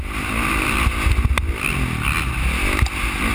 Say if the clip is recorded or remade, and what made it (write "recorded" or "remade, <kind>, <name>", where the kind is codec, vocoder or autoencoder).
recorded